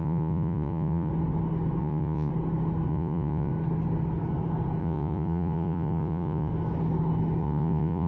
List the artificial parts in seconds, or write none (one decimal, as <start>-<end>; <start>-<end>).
0.0-1.1; 1.8-2.3; 2.9-3.5; 4.8-6.5; 7.4-8.1

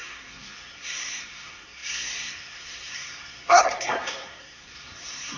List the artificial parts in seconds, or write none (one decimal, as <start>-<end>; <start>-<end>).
0.0-5.4